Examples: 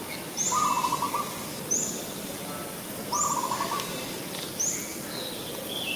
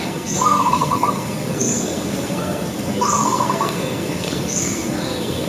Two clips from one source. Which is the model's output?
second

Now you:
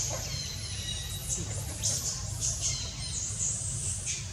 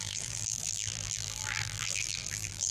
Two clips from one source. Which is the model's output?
second